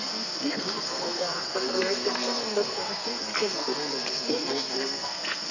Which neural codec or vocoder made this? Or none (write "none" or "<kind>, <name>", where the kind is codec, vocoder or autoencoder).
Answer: codec, SNAC